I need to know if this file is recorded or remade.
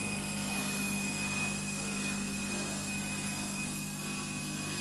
remade